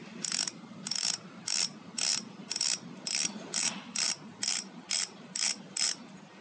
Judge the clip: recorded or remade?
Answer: recorded